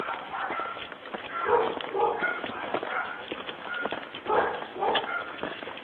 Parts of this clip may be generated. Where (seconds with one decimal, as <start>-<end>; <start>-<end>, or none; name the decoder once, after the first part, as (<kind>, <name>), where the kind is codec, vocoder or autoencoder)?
0.7-4.2 (autoencoder, DAC-VAE); 4.7-5.8